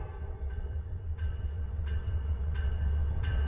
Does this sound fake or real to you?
fake